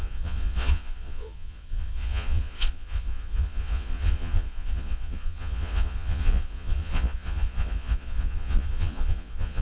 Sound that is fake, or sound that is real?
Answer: fake